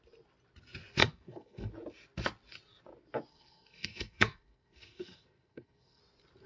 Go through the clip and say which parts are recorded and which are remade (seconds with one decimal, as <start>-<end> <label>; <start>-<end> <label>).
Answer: 0.0-1.0 recorded; 1.0-1.7 remade; 1.7-3.3 recorded; 3.3-6.0 remade; 6.0-6.5 recorded